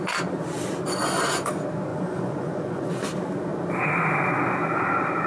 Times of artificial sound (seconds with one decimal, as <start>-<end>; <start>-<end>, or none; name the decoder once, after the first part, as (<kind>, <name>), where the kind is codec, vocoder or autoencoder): 1.0-1.5 (vocoder, Vocos); 1.9-2.9